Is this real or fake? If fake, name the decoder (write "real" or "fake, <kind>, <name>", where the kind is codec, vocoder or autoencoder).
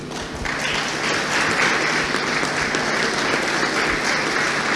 real